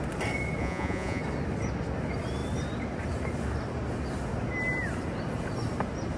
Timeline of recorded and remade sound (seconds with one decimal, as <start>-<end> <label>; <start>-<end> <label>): 0.0-0.6 recorded; 0.6-1.2 remade; 1.2-6.2 recorded